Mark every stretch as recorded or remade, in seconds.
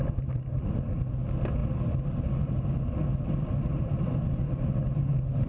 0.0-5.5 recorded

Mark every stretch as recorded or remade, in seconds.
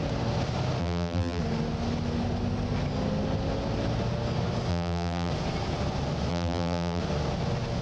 0.0-0.8 recorded; 0.8-1.4 remade; 1.4-4.7 recorded; 4.7-5.3 remade; 5.3-6.3 recorded; 6.3-7.0 remade; 7.0-7.8 recorded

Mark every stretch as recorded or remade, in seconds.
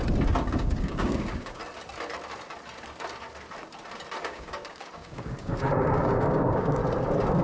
0.0-0.6 recorded; 0.6-1.6 remade; 1.6-4.2 recorded; 4.2-6.8 remade; 6.8-7.4 recorded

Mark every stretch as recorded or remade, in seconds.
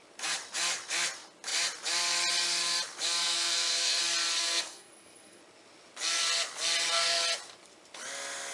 0.0-3.2 recorded; 3.2-4.0 remade; 4.0-4.4 recorded; 4.4-5.4 remade; 5.4-8.5 recorded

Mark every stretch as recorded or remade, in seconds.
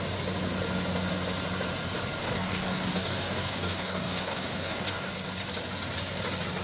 0.0-2.2 recorded; 2.2-5.1 remade; 5.1-6.6 recorded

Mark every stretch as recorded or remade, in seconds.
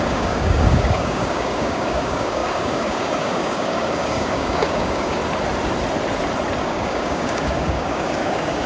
0.0-5.2 remade; 5.2-6.6 recorded; 6.6-8.7 remade